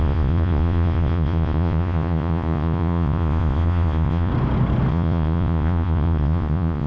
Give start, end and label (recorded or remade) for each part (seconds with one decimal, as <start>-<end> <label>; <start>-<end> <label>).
0.0-4.3 remade; 4.3-4.9 recorded; 4.9-6.9 remade